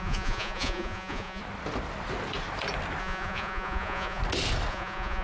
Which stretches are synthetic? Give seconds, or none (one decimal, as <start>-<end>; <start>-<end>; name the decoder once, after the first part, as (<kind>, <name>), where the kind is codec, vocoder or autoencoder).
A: 0.0-1.4 (vocoder, Vocos); 3.0-4.2; 4.7-5.2